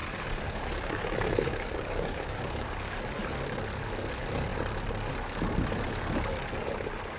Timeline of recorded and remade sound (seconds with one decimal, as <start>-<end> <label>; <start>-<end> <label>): 0.0-3.0 remade; 3.0-7.2 recorded

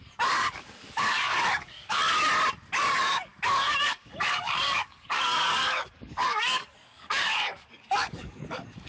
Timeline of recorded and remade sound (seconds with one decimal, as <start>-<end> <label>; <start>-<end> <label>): 0.0-2.0 remade; 2.0-2.7 recorded; 2.7-8.9 remade